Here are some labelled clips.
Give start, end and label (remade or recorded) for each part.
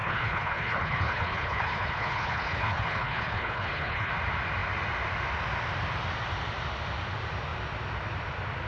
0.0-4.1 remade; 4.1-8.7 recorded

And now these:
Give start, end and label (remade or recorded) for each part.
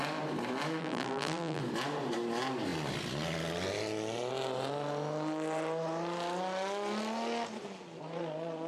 0.0-0.8 recorded; 0.8-1.6 remade; 1.6-8.7 recorded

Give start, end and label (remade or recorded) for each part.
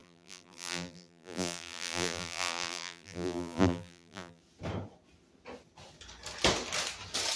0.0-4.4 remade; 4.4-7.4 recorded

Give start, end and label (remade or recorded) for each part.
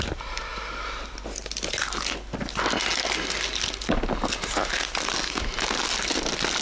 0.0-6.6 recorded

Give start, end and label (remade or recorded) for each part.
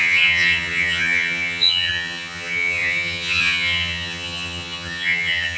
0.0-5.6 remade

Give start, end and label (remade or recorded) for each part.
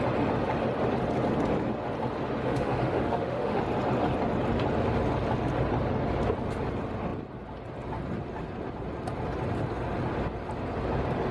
0.0-2.4 recorded; 2.4-3.6 remade; 3.6-11.3 recorded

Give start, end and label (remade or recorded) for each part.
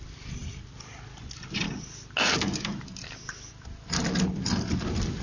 0.0-5.2 recorded